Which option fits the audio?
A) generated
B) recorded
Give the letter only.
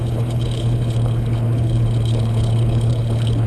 A